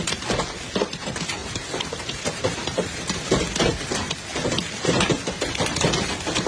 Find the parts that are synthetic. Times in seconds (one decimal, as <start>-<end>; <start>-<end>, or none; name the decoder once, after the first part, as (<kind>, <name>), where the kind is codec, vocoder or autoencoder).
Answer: 1.4-3.4 (vocoder, BigVGAN v2)